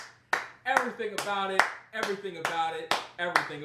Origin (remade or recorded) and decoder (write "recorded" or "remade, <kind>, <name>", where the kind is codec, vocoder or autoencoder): recorded